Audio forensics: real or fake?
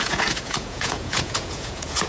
fake